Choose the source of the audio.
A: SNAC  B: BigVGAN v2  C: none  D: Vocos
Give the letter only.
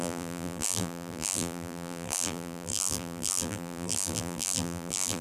B